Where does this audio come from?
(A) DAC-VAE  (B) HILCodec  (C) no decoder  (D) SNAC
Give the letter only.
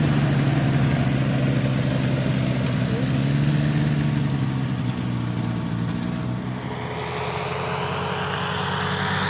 C